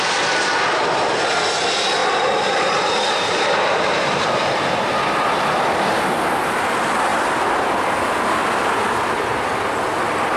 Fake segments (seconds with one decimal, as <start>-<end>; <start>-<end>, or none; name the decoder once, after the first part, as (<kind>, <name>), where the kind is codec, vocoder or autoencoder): 2.0-4.5 (vocoder, BigVGAN v2)